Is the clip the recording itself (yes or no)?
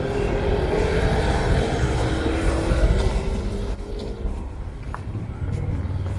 yes